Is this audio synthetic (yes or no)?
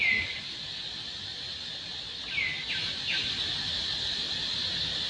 no